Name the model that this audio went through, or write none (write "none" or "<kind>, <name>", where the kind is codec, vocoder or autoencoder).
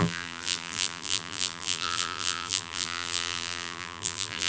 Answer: vocoder, BigVGAN v2